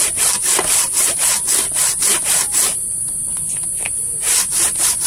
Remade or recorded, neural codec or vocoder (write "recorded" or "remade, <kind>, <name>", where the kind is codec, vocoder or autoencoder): recorded